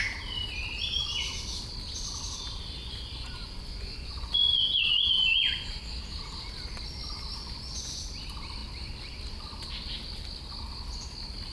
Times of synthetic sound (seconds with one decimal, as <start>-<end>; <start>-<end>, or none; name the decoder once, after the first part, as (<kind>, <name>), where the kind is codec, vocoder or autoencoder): 2.8-5.8 (vocoder, Vocos); 7.4-8.0